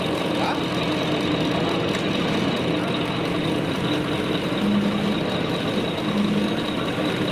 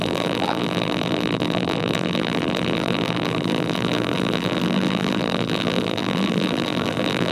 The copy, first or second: second